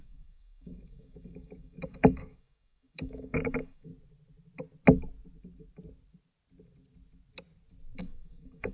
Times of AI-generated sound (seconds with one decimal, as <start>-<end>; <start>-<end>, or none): 0.0-3.9; 8.0-8.7